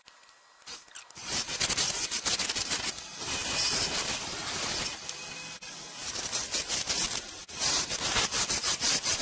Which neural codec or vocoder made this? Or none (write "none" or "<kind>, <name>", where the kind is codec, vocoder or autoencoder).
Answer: none